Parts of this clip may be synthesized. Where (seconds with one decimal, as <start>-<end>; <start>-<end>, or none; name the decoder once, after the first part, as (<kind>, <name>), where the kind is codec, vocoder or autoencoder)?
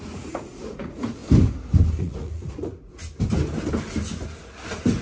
0.0-1.2 (vocoder, Vocos); 2.0-3.0